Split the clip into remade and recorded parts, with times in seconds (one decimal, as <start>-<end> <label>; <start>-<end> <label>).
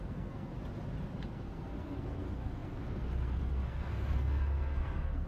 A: 0.0-0.5 remade; 0.5-1.3 recorded; 1.3-5.3 remade